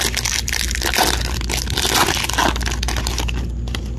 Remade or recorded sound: recorded